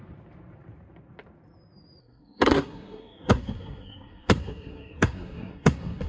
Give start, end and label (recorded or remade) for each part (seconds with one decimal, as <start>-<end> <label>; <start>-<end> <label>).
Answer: 0.0-2.0 recorded; 2.0-6.1 remade